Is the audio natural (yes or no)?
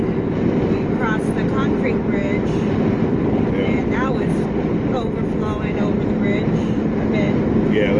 yes